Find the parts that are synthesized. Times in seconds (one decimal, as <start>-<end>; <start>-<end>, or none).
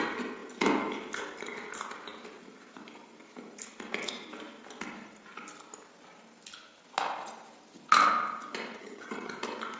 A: 8.8-9.3